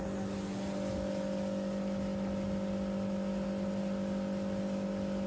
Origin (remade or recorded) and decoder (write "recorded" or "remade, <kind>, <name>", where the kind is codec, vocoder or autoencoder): recorded